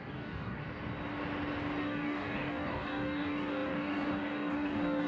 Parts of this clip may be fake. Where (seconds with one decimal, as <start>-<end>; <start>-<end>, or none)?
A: 0.0-0.6; 1.8-5.1